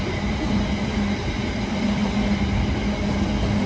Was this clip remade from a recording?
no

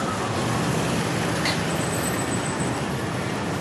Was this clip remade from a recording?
no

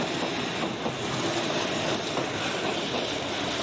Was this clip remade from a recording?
no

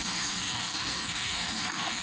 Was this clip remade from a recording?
yes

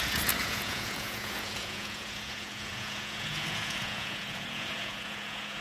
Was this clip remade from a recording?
yes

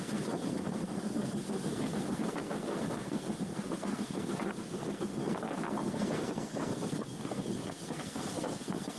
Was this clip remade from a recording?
yes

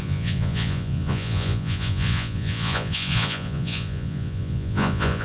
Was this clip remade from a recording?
yes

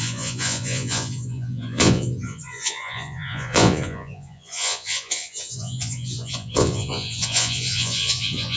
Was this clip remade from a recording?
yes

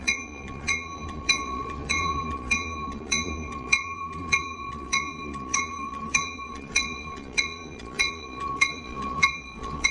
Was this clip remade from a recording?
yes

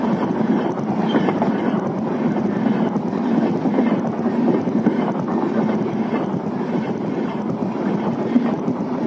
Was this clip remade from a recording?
yes